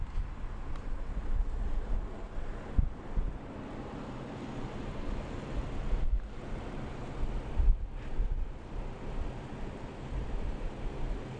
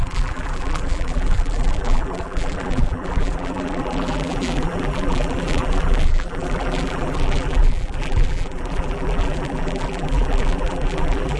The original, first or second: first